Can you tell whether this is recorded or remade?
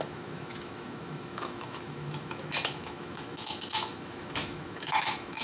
remade